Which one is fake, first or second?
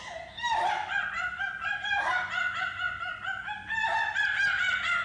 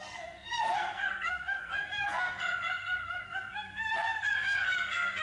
second